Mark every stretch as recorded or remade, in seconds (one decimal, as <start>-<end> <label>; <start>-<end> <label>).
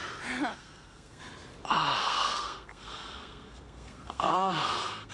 0.0-0.5 recorded; 0.5-1.2 remade; 1.2-2.0 recorded; 2.0-5.1 remade